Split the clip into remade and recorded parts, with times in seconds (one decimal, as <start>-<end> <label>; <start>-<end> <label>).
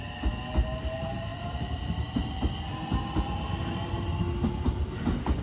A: 0.0-1.3 recorded; 1.3-2.0 remade; 2.0-5.4 recorded